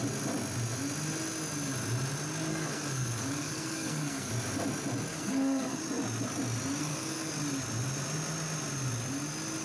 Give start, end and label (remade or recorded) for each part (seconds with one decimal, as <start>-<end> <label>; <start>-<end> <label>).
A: 0.0-2.5 recorded; 2.5-4.3 remade; 4.3-5.1 recorded; 5.1-5.8 remade; 5.8-6.8 recorded; 6.8-7.3 remade; 7.3-9.6 recorded